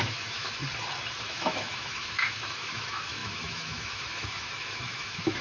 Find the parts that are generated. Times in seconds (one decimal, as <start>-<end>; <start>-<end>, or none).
0.0-0.6; 1.2-5.4